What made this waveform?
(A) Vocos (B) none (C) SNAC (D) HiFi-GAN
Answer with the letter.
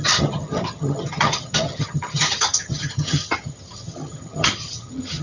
D